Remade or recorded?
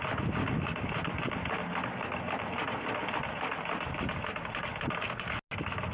recorded